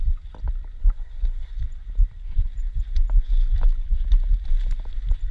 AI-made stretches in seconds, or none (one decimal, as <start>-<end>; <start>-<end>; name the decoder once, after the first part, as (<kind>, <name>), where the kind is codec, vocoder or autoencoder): 0.8-1.5 (codec, SNAC)